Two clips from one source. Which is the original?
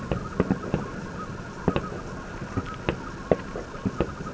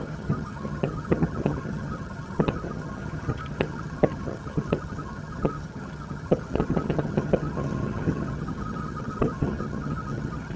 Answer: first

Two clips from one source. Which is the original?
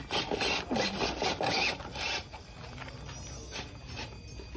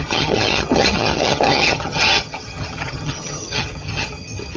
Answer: first